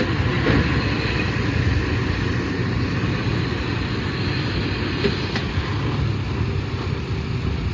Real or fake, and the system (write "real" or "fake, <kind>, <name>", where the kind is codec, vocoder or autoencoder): real